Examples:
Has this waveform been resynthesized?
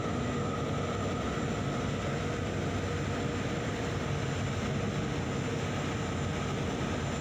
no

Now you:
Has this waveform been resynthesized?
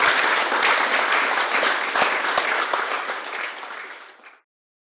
yes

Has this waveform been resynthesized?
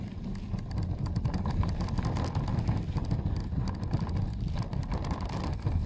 no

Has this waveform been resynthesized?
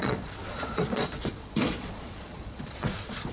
yes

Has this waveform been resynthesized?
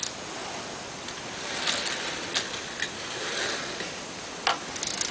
no